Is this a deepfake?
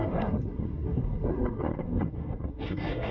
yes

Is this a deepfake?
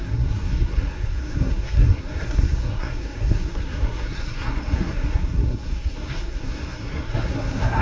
yes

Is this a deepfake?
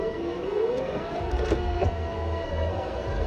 yes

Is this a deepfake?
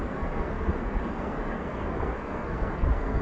yes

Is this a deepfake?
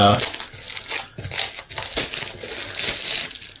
no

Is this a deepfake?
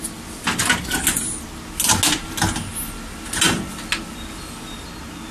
no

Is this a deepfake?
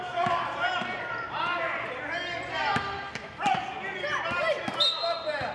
no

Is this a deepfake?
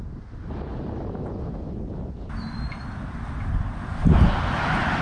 no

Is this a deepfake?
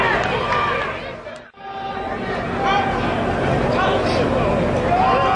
no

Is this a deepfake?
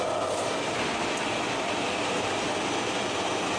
no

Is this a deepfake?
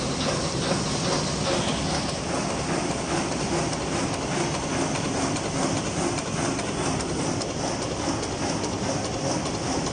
no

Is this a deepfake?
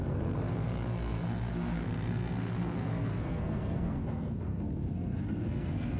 yes